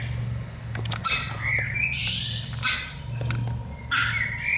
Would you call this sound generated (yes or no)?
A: no